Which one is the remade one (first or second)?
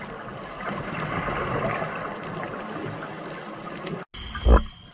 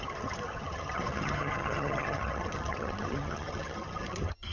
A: second